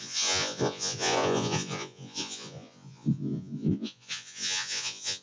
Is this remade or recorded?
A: remade